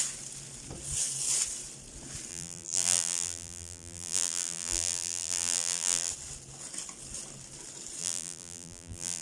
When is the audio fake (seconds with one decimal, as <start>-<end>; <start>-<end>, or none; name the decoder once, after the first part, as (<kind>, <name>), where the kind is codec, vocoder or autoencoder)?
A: 2.3-6.1 (vocoder, BigVGAN v2); 8.0-9.2